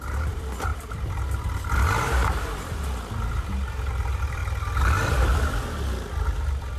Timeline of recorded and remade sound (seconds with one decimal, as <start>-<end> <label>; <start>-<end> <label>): 0.0-4.4 remade; 4.4-5.1 recorded; 5.1-6.8 remade